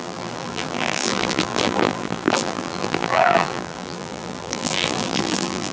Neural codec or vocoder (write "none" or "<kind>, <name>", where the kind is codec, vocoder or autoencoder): vocoder, BigVGAN v2